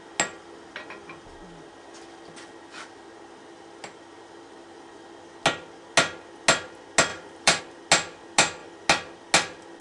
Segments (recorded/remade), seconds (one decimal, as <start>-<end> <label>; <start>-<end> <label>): 0.0-7.1 recorded; 7.1-7.6 remade; 7.6-9.8 recorded